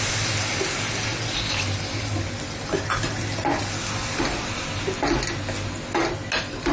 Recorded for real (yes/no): yes